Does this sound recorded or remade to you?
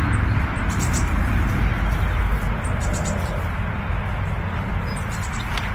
recorded